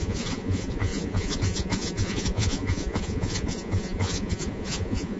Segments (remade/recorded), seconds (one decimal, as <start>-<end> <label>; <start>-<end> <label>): 0.0-5.2 remade